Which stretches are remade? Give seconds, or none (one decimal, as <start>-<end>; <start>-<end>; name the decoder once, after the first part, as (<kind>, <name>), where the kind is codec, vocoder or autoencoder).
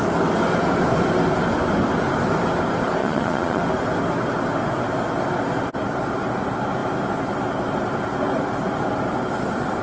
3.0-3.6 (vocoder, Vocos)